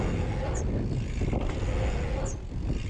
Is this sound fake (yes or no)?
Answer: no